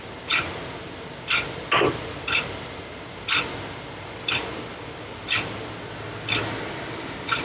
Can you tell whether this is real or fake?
real